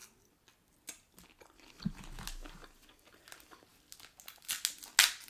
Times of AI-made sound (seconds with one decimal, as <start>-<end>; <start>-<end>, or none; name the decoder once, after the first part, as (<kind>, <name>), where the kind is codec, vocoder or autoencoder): none